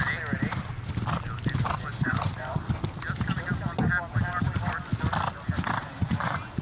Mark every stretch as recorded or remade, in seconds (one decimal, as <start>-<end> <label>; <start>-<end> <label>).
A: 0.0-1.9 recorded; 1.9-2.7 remade; 2.7-5.8 recorded; 5.8-6.6 remade